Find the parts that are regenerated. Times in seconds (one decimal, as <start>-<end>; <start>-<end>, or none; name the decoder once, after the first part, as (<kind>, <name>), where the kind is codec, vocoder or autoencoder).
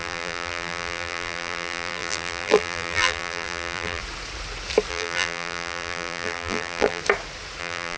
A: 0.0-4.0 (vocoder, BigVGAN v2); 4.9-7.0; 7.6-8.0